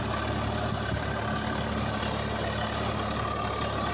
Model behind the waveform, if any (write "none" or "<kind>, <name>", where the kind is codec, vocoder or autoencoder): none